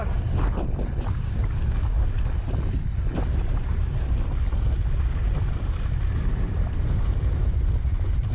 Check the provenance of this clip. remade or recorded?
recorded